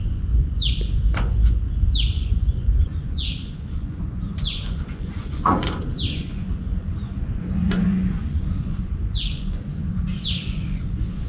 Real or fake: fake